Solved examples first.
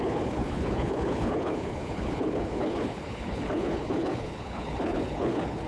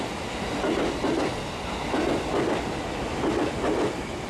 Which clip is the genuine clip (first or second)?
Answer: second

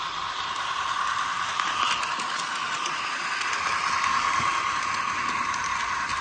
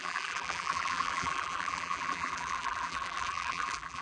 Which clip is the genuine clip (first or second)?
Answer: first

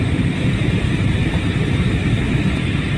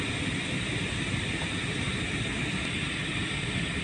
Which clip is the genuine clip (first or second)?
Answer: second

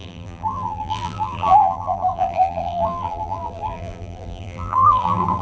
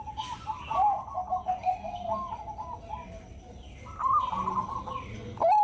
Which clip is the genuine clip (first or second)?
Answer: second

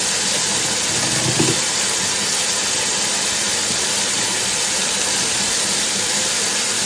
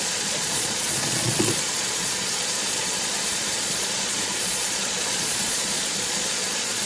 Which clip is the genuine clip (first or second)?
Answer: first